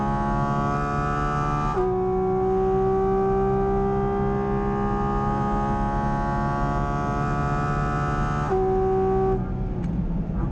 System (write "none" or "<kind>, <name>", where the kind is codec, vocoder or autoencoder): none